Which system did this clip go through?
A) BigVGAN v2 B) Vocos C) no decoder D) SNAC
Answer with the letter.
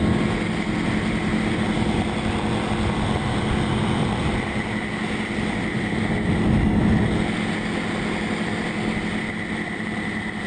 C